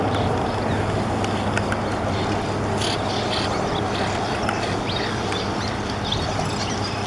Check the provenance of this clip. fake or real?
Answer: real